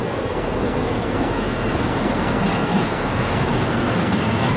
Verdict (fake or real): fake